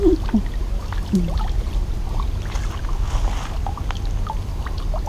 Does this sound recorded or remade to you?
recorded